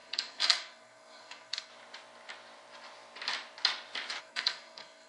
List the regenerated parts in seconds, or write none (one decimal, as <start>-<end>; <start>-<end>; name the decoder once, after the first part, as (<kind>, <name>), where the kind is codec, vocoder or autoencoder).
0.0-1.7 (codec, SNAC); 4.2-5.1